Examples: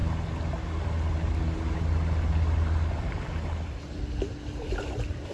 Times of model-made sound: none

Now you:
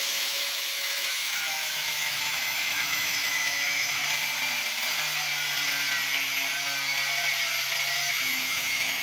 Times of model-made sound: 0.0-4.0 (autoencoder, DAC-VAE); 8.1-9.0

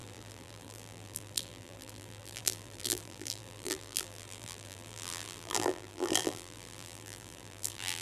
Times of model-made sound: 0.0-8.0 (vocoder, BigVGAN v2)

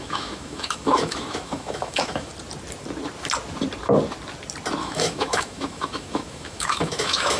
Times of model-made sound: 0.0-2.3 (autoencoder, DAC-VAE); 4.8-7.4

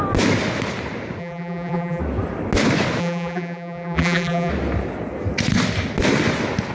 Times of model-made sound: 1.2-2.0 (vocoder, BigVGAN v2); 3.0-4.5

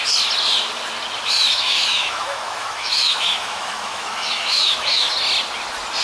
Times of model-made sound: 1.5-5.1 (autoencoder, DAC-VAE)